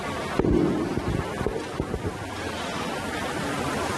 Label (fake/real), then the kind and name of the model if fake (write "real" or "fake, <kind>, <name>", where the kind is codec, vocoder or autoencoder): real